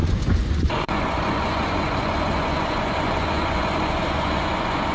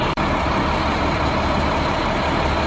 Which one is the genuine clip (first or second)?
second